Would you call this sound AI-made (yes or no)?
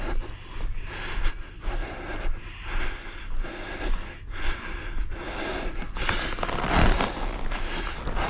no